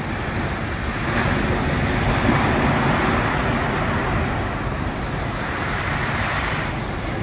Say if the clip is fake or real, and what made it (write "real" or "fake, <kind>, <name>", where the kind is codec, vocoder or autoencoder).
real